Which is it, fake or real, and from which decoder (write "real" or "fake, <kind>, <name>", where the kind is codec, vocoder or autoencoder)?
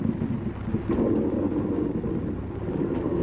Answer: real